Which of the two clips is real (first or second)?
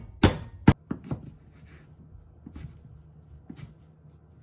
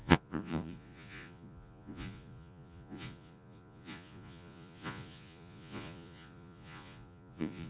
first